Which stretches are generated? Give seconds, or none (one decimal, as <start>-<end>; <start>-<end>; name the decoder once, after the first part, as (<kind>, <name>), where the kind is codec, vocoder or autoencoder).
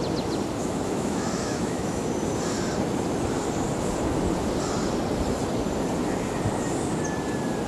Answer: 0.6-2.0 (autoencoder, DAC-VAE)